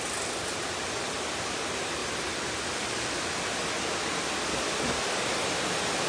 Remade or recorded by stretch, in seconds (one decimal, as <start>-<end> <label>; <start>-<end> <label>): 0.0-6.1 recorded